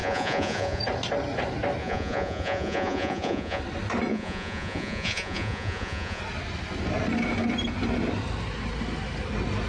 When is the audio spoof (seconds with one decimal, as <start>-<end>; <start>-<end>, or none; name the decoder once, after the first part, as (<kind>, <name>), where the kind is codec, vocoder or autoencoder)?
0.0-0.8 (vocoder, Vocos); 1.8-3.6; 4.1-6.2